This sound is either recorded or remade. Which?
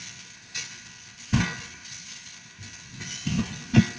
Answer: recorded